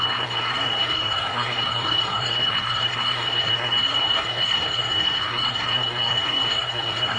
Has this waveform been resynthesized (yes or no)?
yes